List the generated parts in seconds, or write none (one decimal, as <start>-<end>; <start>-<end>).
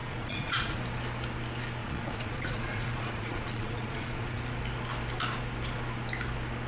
0.0-0.8; 1.8-4.4